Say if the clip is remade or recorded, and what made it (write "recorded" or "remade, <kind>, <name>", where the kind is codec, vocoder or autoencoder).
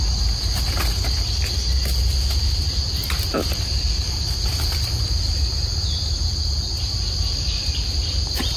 recorded